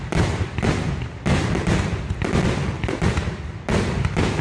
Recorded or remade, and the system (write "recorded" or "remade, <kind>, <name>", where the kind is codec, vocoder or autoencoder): recorded